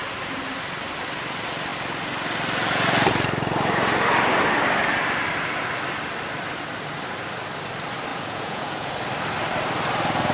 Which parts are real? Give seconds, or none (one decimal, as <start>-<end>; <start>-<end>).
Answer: 0.0-8.1; 8.9-10.3